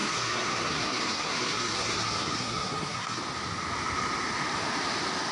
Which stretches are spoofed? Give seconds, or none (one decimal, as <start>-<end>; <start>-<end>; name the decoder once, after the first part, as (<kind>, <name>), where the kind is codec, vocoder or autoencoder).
0.0-3.2 (codec, SNAC)